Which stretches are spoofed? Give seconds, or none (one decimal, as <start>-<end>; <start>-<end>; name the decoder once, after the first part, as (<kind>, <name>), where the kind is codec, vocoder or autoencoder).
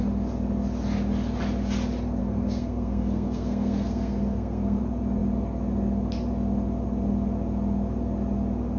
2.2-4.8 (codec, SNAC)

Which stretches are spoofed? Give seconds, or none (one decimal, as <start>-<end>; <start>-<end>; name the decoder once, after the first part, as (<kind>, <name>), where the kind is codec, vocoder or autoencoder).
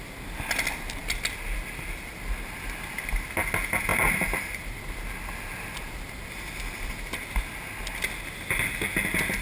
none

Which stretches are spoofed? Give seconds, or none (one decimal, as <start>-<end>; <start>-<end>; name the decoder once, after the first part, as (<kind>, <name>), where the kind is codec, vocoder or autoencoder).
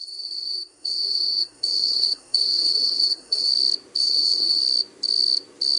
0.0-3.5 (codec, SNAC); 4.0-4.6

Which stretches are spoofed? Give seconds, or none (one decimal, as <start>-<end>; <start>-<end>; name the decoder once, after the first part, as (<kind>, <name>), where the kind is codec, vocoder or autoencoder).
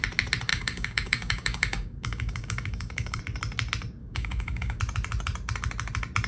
0.5-3.2 (codec, DAC); 4.0-4.8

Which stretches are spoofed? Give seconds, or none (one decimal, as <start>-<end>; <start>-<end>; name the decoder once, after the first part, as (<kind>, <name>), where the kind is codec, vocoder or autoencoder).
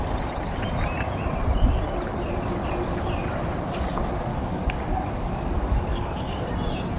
4.3-6.5 (codec, DAC)